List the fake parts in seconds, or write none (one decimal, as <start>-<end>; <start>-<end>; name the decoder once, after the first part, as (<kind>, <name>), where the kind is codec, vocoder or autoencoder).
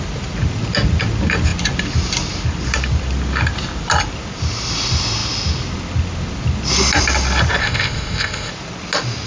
7.6-8.5 (codec, ZipCodec)